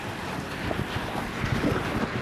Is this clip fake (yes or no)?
no